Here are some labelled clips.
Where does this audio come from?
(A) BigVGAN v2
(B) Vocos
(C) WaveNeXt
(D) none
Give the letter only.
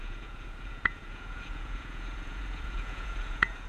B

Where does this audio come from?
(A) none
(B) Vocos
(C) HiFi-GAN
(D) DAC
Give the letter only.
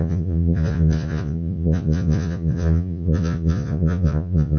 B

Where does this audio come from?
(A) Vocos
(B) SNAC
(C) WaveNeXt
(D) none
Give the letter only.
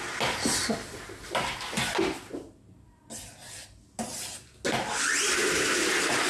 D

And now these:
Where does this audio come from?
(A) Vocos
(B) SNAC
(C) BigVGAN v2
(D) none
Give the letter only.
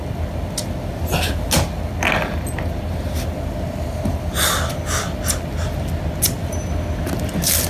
D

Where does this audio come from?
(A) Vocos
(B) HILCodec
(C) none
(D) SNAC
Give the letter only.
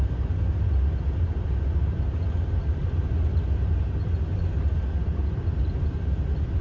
C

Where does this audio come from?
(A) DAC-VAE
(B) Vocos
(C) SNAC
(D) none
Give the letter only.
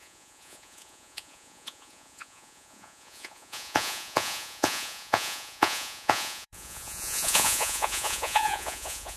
B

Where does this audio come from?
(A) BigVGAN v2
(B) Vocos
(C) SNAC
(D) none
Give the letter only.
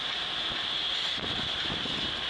D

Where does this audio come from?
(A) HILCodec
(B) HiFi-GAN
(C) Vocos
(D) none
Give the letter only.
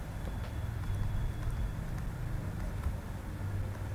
D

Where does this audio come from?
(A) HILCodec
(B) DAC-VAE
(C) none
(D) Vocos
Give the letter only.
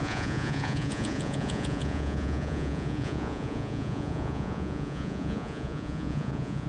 D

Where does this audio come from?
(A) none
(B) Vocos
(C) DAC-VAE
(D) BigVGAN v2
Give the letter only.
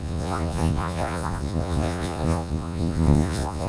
B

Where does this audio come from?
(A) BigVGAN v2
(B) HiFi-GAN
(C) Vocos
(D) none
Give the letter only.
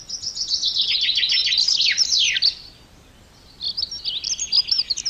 D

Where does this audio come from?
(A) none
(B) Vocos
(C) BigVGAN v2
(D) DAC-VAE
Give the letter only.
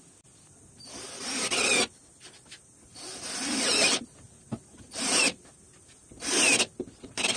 A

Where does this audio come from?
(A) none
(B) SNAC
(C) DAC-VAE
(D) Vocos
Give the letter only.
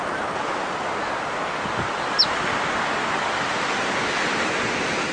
A